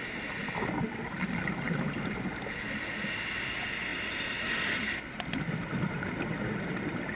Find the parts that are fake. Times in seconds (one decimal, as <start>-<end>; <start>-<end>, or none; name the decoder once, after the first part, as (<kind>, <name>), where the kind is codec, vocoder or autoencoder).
3.9-5.0 (vocoder, BigVGAN v2)